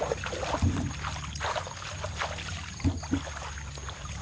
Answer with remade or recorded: recorded